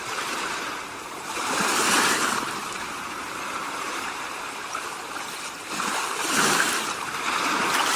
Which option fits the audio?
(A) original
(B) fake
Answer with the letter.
B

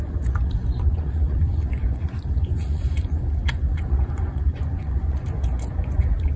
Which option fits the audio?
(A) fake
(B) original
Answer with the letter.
A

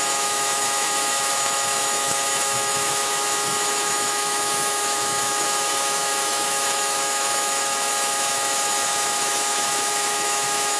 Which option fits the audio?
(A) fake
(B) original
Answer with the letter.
A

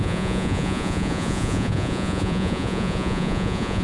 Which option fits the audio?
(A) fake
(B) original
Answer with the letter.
A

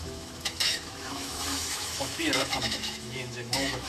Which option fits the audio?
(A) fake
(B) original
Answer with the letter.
A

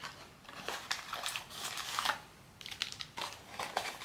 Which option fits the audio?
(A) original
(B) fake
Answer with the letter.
A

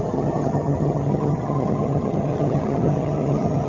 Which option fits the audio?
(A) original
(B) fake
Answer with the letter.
B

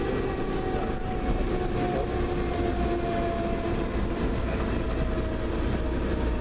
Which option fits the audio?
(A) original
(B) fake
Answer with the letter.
A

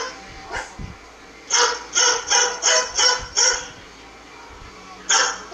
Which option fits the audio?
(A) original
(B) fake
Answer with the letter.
A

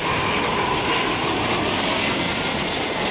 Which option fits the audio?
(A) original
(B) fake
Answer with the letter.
A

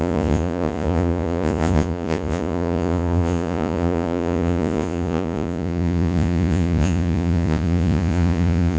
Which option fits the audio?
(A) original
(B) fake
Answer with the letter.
B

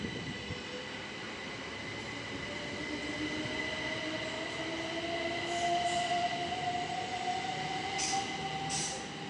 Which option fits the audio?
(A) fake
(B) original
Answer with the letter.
B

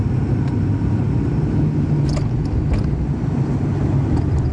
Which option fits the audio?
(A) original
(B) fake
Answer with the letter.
A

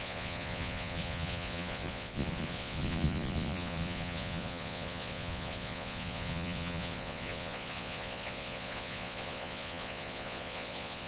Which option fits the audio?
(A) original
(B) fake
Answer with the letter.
B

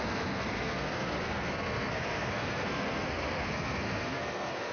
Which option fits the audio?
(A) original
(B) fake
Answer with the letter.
B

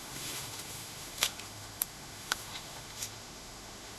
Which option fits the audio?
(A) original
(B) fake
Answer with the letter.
B